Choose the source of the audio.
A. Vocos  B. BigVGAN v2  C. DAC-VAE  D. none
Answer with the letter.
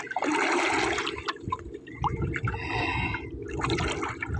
D